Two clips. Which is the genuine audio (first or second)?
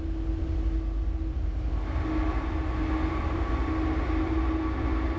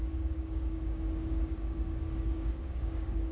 first